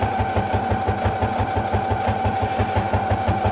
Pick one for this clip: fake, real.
real